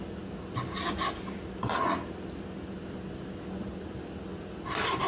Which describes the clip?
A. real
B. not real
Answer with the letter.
A